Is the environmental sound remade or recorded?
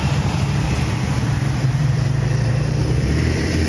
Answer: remade